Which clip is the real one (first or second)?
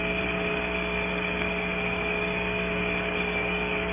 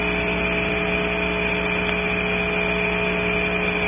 second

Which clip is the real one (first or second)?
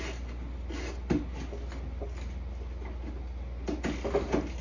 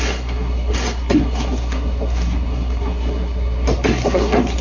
first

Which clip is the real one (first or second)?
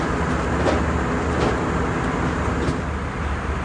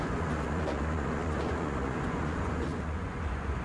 first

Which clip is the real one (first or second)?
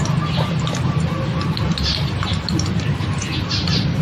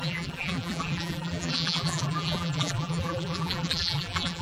first